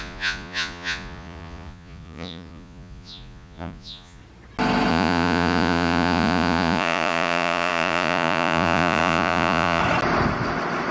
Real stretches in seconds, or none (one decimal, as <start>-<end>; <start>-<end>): 4.2-4.9; 9.8-10.9